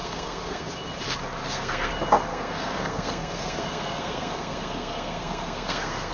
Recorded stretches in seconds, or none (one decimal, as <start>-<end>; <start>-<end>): 0.7-1.4; 1.9-2.3